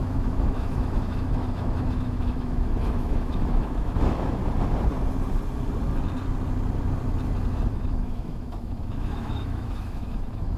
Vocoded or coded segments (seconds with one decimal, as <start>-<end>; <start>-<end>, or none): 0.0-4.4; 7.7-10.6